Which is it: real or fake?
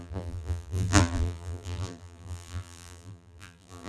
fake